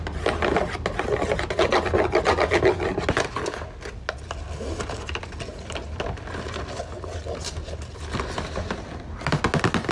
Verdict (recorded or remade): recorded